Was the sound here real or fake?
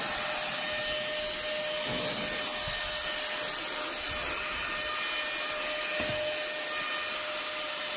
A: real